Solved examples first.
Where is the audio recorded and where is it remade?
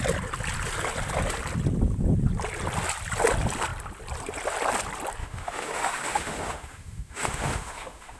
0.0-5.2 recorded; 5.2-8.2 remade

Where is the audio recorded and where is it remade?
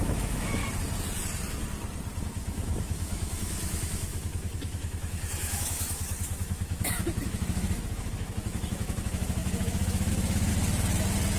0.0-0.6 remade; 0.6-2.2 recorded; 2.2-10.5 remade; 10.5-11.4 recorded